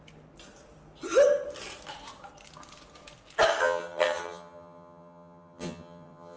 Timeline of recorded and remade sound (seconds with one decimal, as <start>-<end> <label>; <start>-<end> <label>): 0.0-3.6 recorded; 3.6-6.4 remade

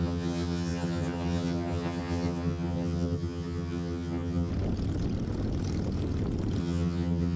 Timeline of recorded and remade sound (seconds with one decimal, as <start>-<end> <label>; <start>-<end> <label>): 0.0-4.5 remade; 4.5-6.6 recorded; 6.6-7.4 remade

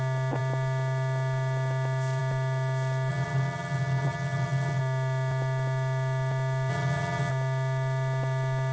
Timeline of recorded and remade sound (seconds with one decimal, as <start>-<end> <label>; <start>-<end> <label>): 0.0-3.1 recorded; 3.1-4.8 remade; 4.8-6.7 recorded; 6.7-7.3 remade; 7.3-8.7 recorded

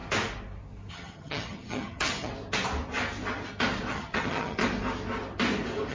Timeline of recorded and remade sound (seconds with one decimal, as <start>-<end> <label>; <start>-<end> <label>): 0.0-0.9 recorded; 0.9-2.3 remade; 2.3-3.9 recorded; 3.9-4.6 remade; 4.6-5.9 recorded

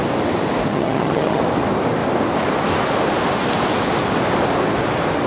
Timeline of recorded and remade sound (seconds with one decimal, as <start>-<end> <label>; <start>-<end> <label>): 0.0-0.7 recorded; 0.7-1.4 remade; 1.4-5.3 recorded